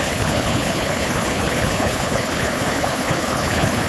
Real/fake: fake